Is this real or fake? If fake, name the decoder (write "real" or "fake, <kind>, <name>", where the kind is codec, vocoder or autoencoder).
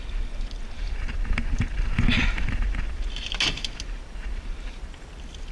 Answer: real